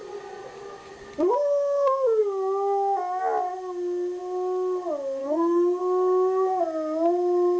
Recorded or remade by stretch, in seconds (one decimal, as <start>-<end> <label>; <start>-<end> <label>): 0.0-5.2 recorded; 5.2-5.8 remade; 5.8-7.6 recorded

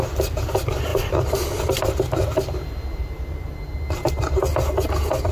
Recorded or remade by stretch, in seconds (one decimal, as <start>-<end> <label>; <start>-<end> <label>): 0.0-5.3 recorded

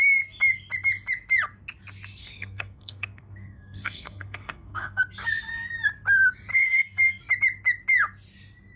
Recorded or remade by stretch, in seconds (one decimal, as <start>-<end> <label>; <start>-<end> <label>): 0.0-2.2 recorded; 2.2-5.0 remade; 5.0-6.5 recorded; 6.5-7.2 remade; 7.2-8.8 recorded